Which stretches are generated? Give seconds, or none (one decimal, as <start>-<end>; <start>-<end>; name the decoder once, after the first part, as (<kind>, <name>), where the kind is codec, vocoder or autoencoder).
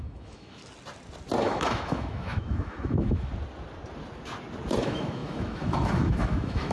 0.0-0.6 (autoencoder, DAC-VAE); 1.4-3.3; 4.8-6.7